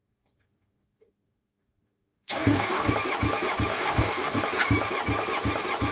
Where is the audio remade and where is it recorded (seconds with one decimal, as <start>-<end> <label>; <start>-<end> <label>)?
0.0-2.9 remade; 2.9-3.7 recorded; 3.7-4.4 remade; 4.4-5.9 recorded